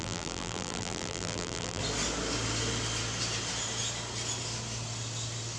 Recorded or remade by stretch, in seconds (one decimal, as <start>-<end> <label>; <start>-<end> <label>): 0.0-1.8 remade; 1.8-5.6 recorded